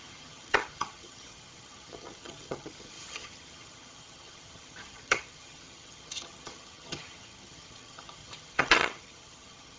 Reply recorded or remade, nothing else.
remade